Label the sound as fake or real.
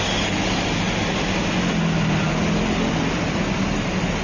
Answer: real